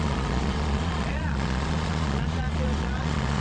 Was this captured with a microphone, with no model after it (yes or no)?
no